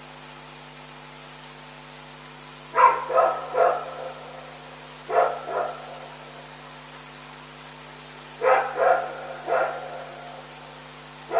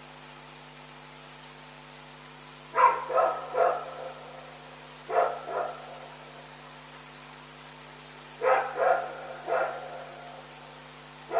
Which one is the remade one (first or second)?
second